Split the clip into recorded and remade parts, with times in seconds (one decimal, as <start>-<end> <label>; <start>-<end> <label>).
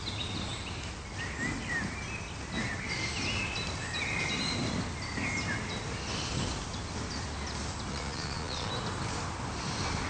0.0-7.9 recorded; 7.9-8.7 remade; 8.7-10.1 recorded